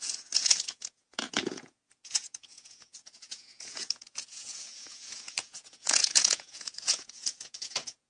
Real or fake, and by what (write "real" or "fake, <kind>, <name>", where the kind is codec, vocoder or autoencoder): fake, vocoder, Vocos